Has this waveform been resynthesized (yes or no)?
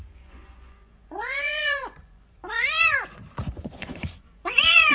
yes